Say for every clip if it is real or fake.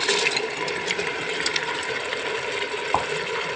real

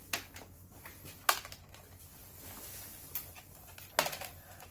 real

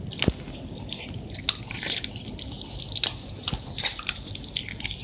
real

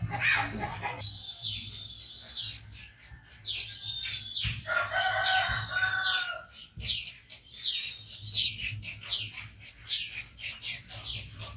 real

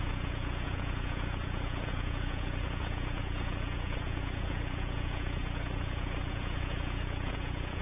fake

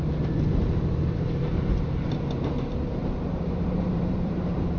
fake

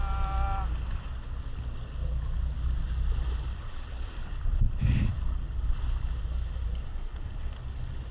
real